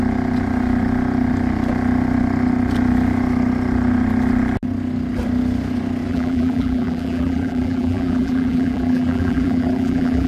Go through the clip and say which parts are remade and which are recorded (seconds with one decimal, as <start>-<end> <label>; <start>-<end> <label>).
0.0-6.1 recorded; 6.1-10.3 remade